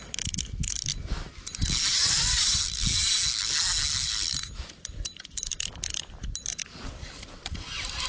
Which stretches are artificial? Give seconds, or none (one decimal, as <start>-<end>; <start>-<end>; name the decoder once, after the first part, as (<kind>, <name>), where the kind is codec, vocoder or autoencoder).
4.0-5.7 (vocoder, BigVGAN v2)